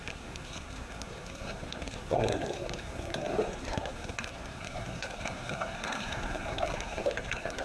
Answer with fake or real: fake